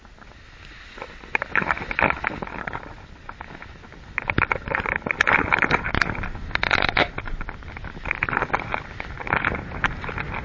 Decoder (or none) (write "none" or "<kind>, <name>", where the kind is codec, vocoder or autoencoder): none